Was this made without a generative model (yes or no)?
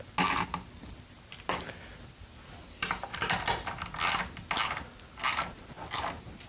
yes